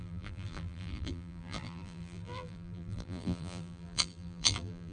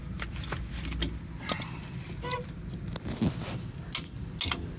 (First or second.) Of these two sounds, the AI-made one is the first